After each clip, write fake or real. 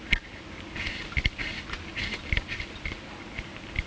real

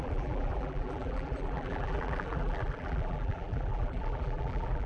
fake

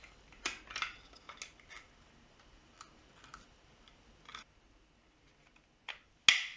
real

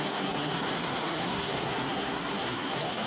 fake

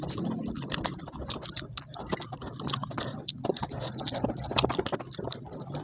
real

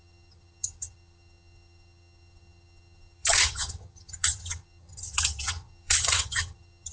fake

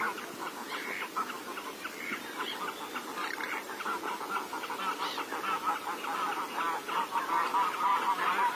real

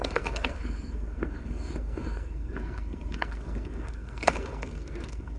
fake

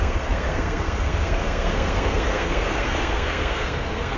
fake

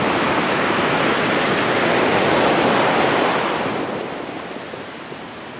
real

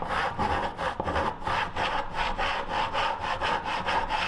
real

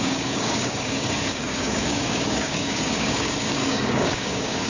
fake